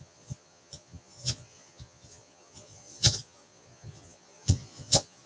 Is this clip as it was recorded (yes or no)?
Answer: no